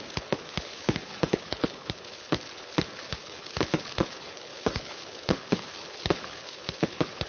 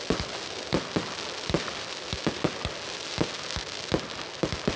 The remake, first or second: first